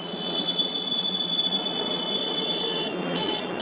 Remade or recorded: remade